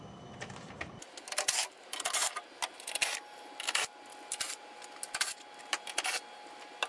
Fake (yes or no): no